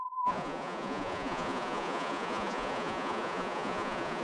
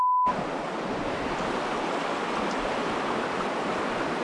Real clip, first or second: second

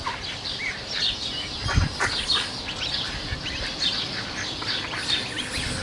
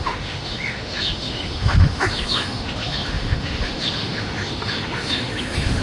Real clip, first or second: first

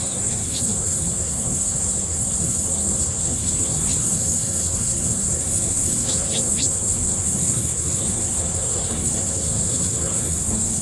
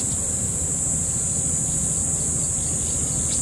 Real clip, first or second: second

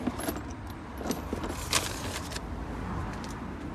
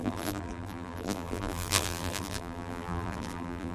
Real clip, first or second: first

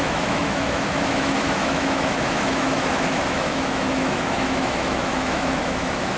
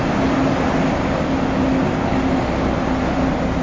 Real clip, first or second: second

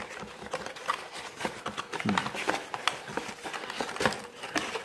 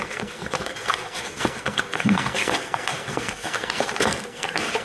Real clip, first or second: first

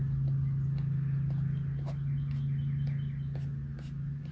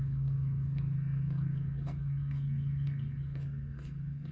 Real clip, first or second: first